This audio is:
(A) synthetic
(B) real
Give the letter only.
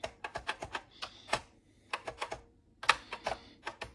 B